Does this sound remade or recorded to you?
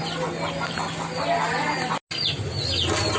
recorded